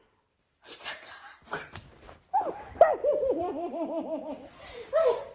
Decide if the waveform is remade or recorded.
remade